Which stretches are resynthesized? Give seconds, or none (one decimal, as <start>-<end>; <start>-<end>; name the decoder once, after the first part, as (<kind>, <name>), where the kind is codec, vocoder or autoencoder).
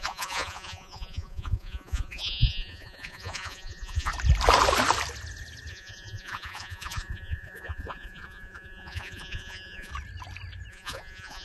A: 0.0-4.1 (vocoder, Vocos); 5.7-9.9; 10.7-11.4